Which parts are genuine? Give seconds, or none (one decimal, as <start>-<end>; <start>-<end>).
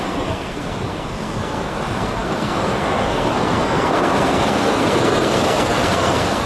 none